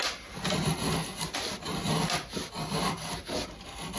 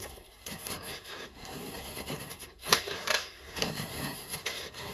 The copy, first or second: second